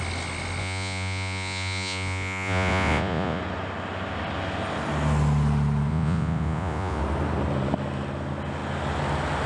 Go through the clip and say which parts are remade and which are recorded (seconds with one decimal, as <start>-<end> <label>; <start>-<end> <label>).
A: 0.0-0.6 recorded; 0.6-3.4 remade; 3.4-5.9 recorded; 5.9-7.0 remade; 7.0-9.5 recorded